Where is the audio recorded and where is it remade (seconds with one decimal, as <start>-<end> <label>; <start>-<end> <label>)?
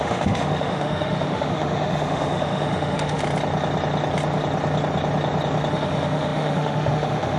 0.0-3.2 remade; 3.2-5.7 recorded; 5.7-7.4 remade